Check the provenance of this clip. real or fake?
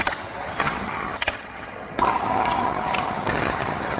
fake